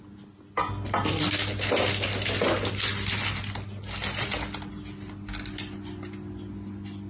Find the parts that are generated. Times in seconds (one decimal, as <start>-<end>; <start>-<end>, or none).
none